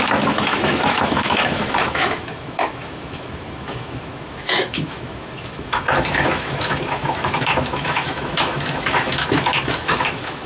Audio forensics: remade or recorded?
remade